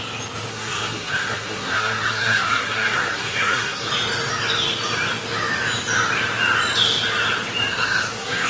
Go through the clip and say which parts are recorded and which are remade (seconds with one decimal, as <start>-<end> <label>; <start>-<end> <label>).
0.0-0.5 recorded; 0.5-3.9 remade; 3.9-7.7 recorded; 7.7-8.5 remade